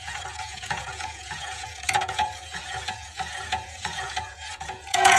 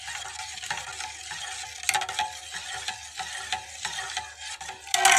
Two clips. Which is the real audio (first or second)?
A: second